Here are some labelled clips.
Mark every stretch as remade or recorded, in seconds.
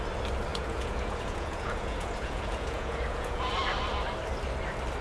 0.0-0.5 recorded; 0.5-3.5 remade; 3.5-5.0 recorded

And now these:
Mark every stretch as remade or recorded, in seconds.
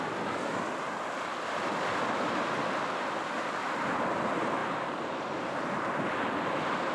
0.0-4.6 recorded; 4.6-5.2 remade; 5.2-6.9 recorded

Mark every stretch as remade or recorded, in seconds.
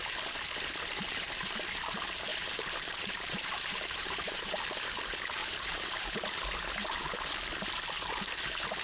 0.0-2.3 recorded; 2.3-4.6 remade; 4.6-5.4 recorded; 5.4-6.6 remade; 6.6-8.8 recorded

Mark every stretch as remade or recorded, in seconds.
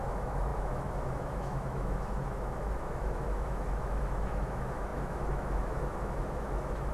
0.0-6.9 remade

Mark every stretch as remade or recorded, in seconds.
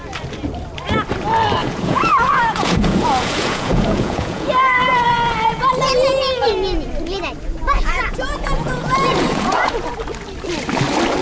0.0-1.6 recorded; 1.6-5.7 remade; 5.7-7.6 recorded; 7.6-9.9 remade; 9.9-11.2 recorded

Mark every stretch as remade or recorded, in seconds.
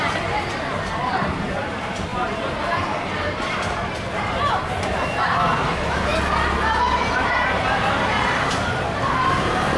0.0-6.1 remade; 6.1-7.2 recorded; 7.2-9.8 remade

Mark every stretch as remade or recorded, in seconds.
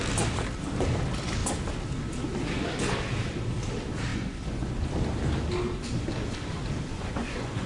0.0-4.1 recorded; 4.1-4.9 remade; 4.9-6.9 recorded; 6.9-7.7 remade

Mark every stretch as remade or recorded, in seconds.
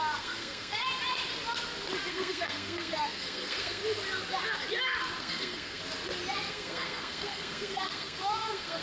0.0-0.8 remade; 0.8-2.1 recorded; 2.1-3.8 remade; 3.8-5.2 recorded; 5.2-5.8 remade; 5.8-6.5 recorded; 6.5-8.8 remade